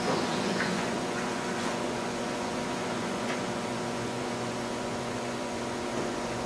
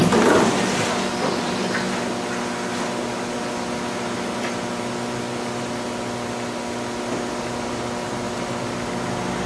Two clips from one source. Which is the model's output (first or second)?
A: first